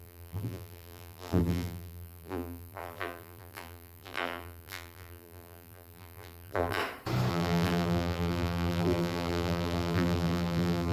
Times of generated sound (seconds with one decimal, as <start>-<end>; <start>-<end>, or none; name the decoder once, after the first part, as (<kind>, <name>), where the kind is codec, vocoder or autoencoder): 0.0-6.8 (vocoder, BigVGAN v2); 7.3-10.9